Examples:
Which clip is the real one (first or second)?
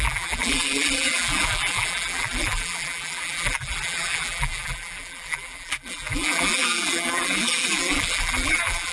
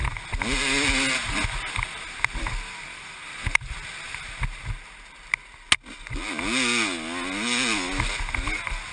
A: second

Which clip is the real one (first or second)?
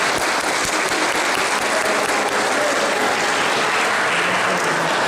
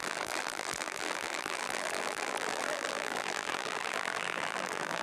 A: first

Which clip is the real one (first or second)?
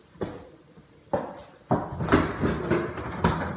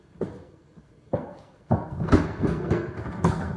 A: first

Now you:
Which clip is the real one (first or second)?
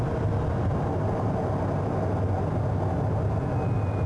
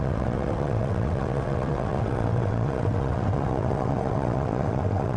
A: first